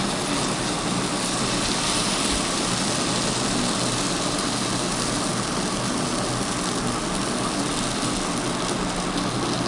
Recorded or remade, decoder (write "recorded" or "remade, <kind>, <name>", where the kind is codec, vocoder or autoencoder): recorded